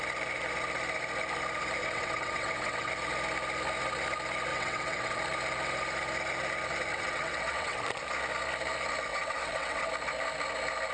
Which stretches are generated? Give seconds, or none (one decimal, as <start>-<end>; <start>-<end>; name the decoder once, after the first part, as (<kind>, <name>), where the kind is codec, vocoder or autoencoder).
1.8-2.9 (vocoder, WaveNeXt); 4.5-5.2; 6.9-7.8; 9.1-9.9